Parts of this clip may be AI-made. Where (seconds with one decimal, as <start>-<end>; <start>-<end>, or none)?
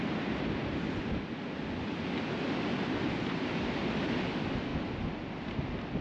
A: none